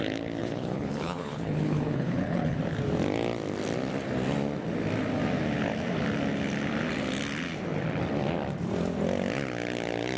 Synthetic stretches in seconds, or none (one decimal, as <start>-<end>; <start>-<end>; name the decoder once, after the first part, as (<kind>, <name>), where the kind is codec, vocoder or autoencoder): 0.4-2.6 (codec, HILCodec)